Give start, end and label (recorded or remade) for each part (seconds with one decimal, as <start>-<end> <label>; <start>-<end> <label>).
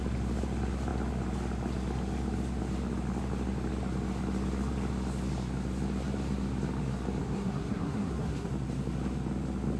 0.0-7.2 recorded; 7.2-8.5 remade; 8.5-9.8 recorded